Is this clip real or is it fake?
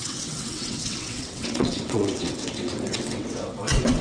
fake